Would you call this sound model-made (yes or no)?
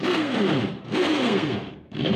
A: yes